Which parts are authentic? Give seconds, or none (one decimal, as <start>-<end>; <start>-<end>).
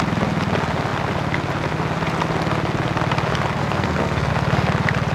0.0-3.6; 4.3-5.1